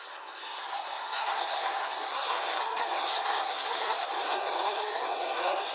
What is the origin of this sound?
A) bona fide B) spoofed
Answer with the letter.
B